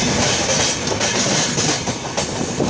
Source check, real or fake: real